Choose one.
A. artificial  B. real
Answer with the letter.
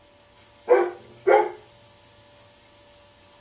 B